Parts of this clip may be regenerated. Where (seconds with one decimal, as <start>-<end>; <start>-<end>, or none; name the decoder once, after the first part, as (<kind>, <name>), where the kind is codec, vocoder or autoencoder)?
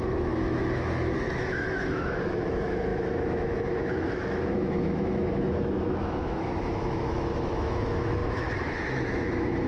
0.0-9.7 (autoencoder, DAC-VAE)